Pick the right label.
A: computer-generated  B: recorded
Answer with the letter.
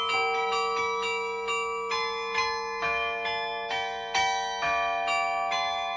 B